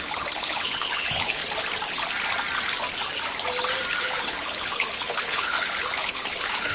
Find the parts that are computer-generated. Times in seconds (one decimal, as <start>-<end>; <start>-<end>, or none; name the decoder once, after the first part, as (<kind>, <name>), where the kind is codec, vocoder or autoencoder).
0.0-1.4 (codec, HILCodec); 4.0-6.7